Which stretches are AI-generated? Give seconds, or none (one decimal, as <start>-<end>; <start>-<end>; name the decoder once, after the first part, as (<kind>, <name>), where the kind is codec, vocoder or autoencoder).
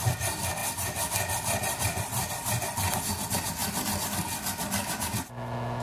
0.6-2.9 (vocoder, BigVGAN v2); 3.6-4.6